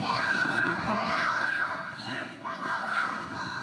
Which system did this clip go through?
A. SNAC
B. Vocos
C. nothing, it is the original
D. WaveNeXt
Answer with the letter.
A